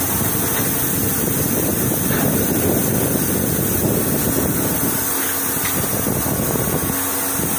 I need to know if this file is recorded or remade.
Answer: recorded